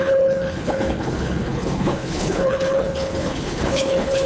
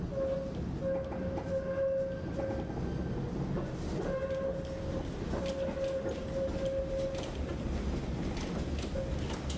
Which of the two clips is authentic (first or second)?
second